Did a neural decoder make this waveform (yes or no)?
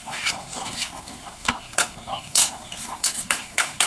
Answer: yes